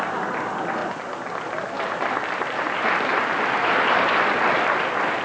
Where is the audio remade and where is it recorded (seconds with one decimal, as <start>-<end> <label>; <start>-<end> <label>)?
0.0-5.2 recorded